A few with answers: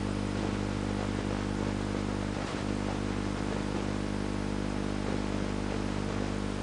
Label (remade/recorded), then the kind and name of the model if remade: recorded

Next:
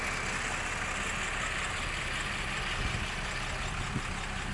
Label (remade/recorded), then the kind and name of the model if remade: recorded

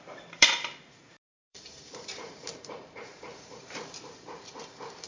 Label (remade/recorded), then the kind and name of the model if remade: remade, vocoder, BigVGAN v2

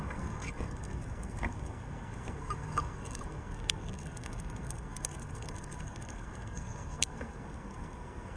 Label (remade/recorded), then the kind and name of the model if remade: remade, codec, SNAC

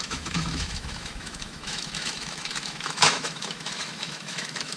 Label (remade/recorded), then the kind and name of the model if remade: remade, autoencoder, DAC-VAE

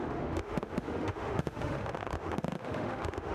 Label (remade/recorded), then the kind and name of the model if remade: remade, autoencoder, DAC-VAE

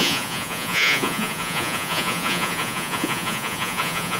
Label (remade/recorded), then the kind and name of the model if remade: remade, vocoder, Vocos